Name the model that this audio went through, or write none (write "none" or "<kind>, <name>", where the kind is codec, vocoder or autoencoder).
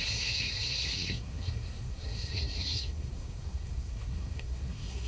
codec, SNAC